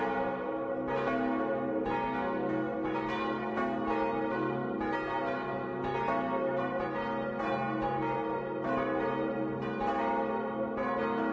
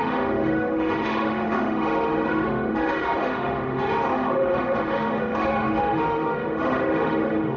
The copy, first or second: second